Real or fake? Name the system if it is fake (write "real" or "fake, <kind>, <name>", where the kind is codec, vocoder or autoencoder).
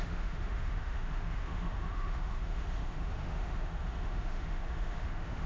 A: fake, autoencoder, DAC-VAE